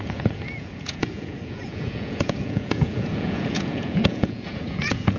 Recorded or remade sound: remade